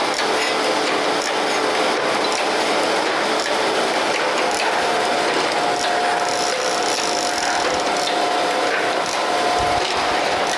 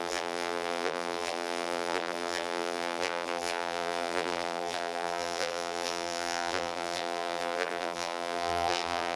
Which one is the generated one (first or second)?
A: second